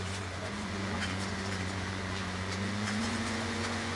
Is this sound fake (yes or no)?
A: yes